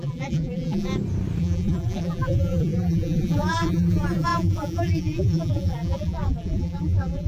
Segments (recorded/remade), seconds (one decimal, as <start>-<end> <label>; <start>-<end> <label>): 0.0-0.9 remade; 0.9-1.4 recorded; 1.4-7.3 remade